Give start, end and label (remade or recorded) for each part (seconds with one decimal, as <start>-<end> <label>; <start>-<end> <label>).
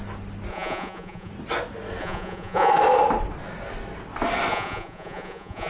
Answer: 0.0-0.5 recorded; 0.5-1.3 remade; 1.3-2.0 recorded; 2.0-2.7 remade; 2.7-4.5 recorded; 4.5-5.7 remade